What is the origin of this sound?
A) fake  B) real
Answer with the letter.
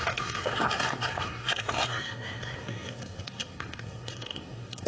A